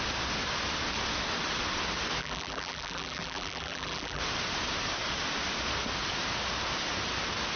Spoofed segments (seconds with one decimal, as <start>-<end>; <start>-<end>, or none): 2.2-4.2